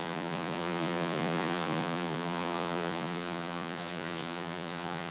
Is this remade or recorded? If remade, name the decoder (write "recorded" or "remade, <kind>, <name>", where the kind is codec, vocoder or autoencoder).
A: remade, vocoder, Vocos